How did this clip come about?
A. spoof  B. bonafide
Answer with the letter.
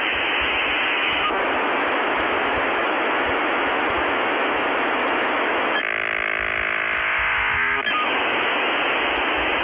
A